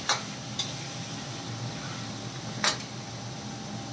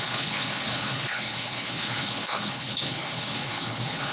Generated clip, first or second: second